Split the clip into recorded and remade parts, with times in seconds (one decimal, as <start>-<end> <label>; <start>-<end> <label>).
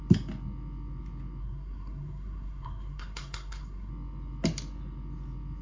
0.0-1.4 recorded; 1.4-3.9 remade; 3.9-5.6 recorded